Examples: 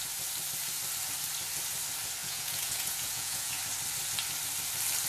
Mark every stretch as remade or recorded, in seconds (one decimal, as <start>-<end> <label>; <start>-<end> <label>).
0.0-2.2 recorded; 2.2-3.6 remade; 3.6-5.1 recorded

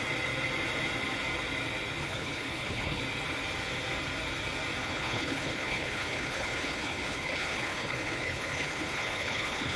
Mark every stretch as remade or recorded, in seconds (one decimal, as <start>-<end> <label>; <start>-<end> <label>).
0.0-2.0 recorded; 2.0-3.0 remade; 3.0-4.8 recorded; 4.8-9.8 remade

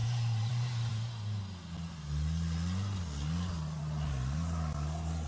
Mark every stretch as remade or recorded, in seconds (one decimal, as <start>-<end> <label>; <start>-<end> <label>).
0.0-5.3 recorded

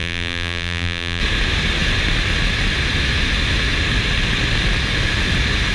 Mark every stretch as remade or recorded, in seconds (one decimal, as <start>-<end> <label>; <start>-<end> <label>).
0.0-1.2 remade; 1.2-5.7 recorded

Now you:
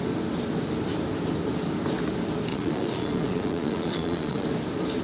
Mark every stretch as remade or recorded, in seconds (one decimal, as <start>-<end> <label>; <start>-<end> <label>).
0.0-2.5 recorded; 2.5-4.5 remade; 4.5-5.0 recorded